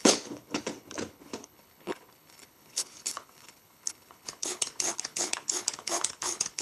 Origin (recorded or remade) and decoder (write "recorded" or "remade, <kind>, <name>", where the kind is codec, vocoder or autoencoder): remade, codec, HILCodec